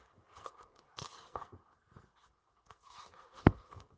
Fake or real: fake